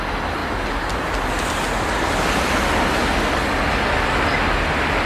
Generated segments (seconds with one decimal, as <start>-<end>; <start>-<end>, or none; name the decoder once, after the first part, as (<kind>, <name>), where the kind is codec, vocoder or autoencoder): none